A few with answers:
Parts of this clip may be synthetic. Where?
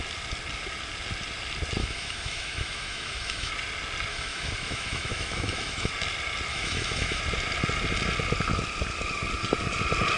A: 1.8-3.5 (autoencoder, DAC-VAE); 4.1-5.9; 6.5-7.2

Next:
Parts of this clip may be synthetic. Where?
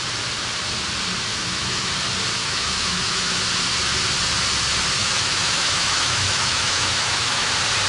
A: 1.3-1.9 (autoencoder, DAC-VAE); 2.4-3.4; 5.0-7.5